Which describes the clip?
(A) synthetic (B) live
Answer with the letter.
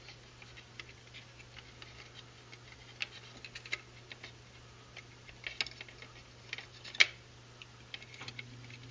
B